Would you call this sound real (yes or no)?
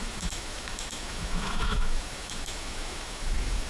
no